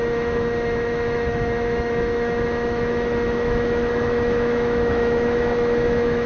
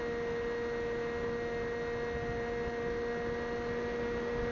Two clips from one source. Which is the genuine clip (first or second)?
second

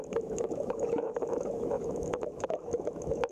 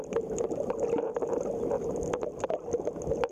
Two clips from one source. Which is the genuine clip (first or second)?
second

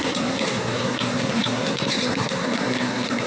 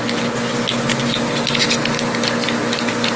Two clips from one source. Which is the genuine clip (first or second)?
second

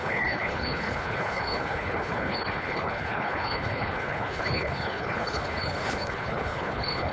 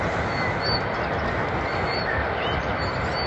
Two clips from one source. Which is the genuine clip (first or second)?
second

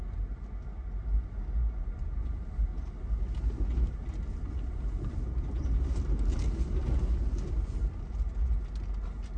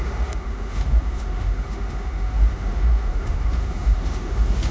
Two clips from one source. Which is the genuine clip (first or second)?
first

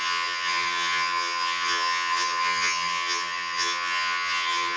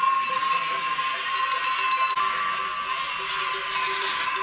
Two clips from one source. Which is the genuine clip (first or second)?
second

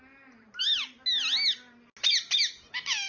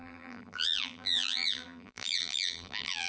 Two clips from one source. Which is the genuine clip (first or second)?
first